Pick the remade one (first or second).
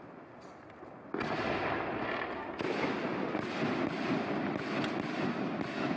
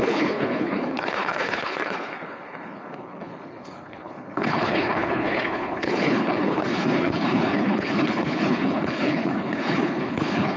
second